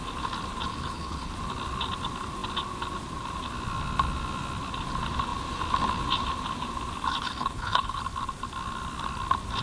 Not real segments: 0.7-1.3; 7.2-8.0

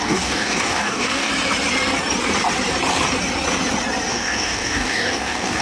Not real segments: 0.0-1.3; 4.1-5.6

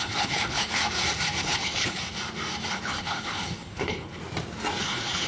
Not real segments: 0.0-0.8; 1.4-2.0; 2.7-4.2; 4.8-5.3

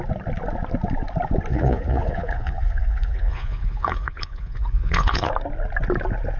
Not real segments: 1.5-5.3